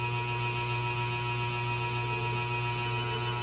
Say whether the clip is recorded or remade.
recorded